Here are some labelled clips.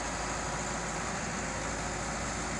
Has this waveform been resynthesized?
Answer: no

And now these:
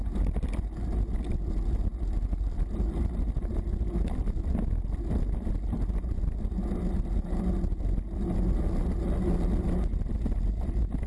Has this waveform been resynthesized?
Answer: no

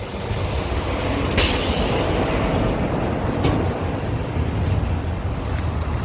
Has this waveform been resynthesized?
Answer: no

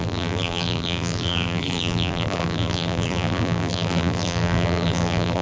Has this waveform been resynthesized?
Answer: yes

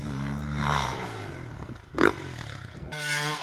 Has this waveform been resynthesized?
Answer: yes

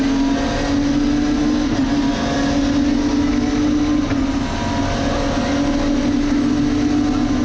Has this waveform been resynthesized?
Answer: no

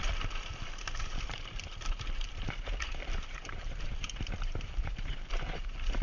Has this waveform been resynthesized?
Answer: yes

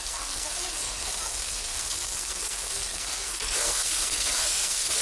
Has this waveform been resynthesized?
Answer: yes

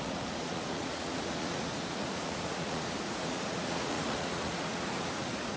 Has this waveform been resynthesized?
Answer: yes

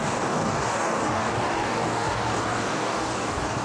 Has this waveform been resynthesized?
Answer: yes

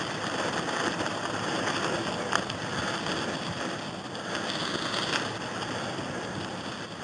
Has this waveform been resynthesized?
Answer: no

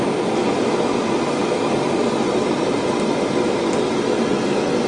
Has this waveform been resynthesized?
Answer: no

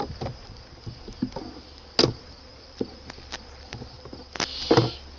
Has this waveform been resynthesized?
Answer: no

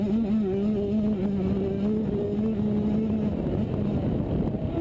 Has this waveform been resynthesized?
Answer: no